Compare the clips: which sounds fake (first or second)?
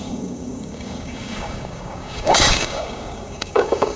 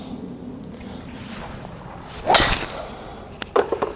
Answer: first